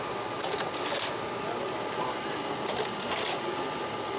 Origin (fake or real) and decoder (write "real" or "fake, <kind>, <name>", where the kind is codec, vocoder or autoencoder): real